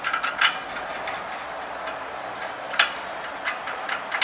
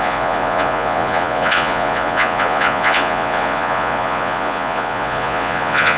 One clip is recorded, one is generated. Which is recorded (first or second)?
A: first